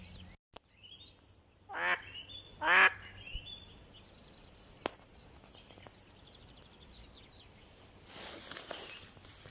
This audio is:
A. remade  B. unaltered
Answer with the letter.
B